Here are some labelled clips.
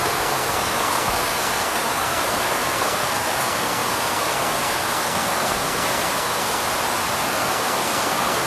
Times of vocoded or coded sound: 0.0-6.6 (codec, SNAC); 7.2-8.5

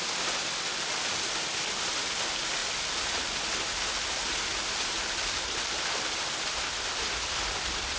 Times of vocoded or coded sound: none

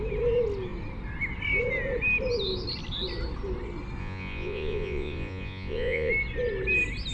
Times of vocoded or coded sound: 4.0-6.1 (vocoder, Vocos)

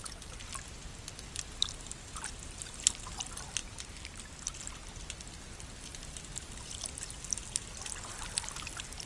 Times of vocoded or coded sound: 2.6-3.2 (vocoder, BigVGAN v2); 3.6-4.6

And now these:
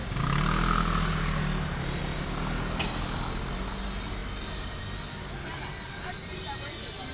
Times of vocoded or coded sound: none

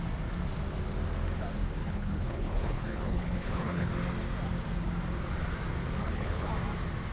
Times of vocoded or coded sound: 1.8-3.9 (codec, HILCodec); 6.0-6.5

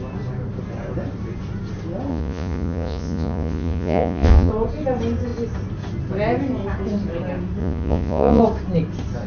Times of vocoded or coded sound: 2.1-4.5 (vocoder, Vocos); 7.6-8.4